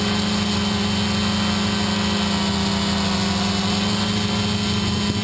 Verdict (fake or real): real